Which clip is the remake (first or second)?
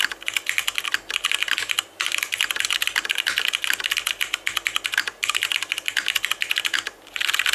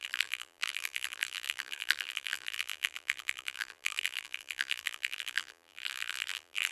second